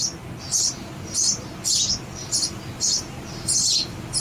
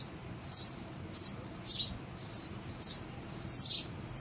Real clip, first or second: first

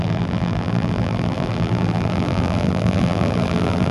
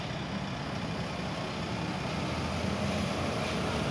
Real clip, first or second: second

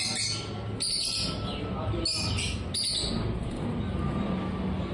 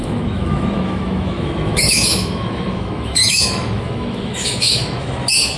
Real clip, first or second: first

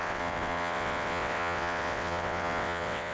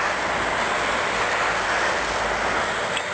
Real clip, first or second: second